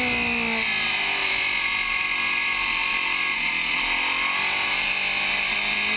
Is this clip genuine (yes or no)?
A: yes